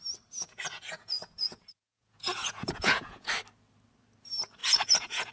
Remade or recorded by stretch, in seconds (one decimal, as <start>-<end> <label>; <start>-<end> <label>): 0.0-0.4 recorded; 0.4-3.3 remade; 3.3-4.6 recorded; 4.6-5.3 remade